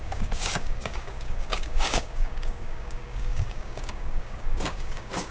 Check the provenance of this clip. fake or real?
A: fake